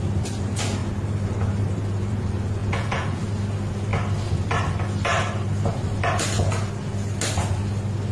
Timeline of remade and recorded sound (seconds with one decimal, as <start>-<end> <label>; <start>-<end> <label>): 0.0-2.6 recorded; 2.6-3.2 remade; 3.2-8.1 recorded